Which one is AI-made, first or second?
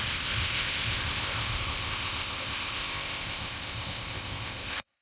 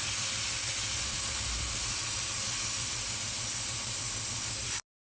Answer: first